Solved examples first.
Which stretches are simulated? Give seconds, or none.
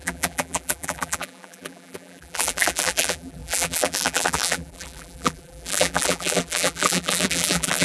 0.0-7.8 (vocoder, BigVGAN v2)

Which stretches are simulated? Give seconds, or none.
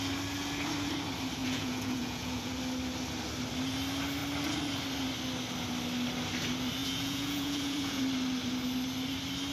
1.4-2.5 (vocoder, Vocos); 6.8-8.0